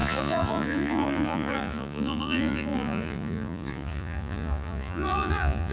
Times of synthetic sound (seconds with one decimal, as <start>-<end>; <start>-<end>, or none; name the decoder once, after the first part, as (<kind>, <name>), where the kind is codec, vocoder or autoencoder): 0.0-5.7 (vocoder, Vocos)